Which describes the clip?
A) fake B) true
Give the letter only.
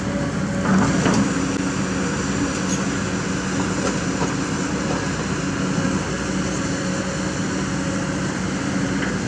B